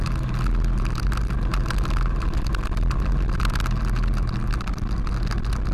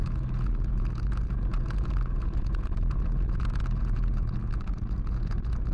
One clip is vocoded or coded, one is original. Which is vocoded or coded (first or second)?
second